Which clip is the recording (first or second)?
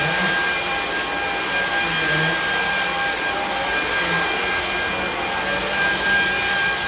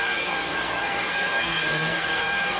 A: first